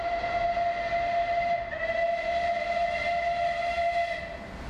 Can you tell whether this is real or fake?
real